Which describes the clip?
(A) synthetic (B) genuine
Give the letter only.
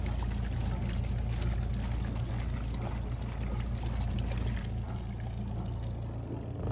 B